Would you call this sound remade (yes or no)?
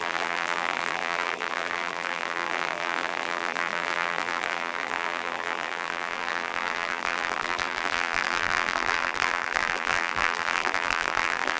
yes